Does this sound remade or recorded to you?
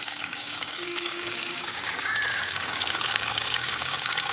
remade